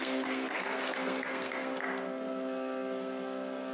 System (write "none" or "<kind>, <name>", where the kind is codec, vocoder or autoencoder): codec, SNAC